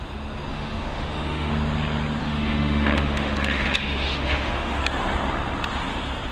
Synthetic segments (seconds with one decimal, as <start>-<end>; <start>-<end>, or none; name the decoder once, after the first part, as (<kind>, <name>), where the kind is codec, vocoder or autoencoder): 0.5-1.5 (autoencoder, DAC-VAE); 2.2-4.8